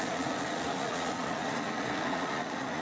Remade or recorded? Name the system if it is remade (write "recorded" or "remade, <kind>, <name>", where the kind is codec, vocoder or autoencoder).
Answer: remade, vocoder, Vocos